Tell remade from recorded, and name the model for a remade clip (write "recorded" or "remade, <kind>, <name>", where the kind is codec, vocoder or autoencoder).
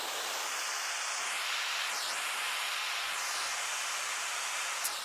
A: recorded